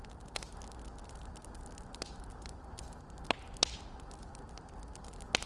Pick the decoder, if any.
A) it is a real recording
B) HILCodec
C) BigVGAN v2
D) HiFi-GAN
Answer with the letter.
A